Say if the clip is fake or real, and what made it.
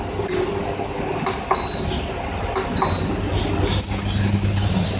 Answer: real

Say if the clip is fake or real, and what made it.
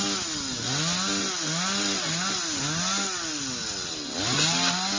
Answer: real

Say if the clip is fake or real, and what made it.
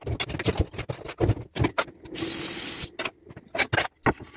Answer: real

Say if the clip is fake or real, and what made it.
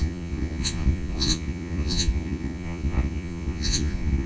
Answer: fake, vocoder, Vocos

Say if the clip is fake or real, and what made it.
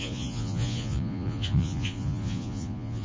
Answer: fake, vocoder, Vocos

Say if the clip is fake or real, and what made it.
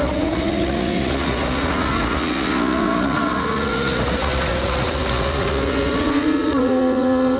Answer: fake, vocoder, Vocos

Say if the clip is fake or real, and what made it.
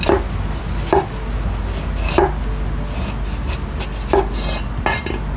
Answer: real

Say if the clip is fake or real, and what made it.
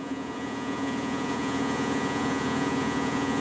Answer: fake, vocoder, Vocos